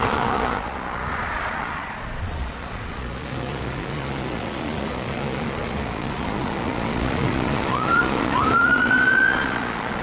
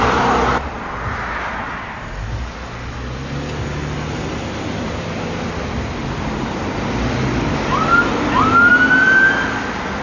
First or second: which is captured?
second